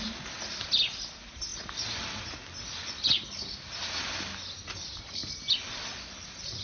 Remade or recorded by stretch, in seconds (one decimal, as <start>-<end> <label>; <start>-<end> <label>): 0.0-6.6 recorded